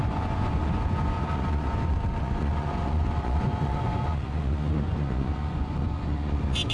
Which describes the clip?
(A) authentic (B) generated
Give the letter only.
B